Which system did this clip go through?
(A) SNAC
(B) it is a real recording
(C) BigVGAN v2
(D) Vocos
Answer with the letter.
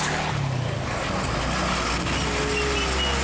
B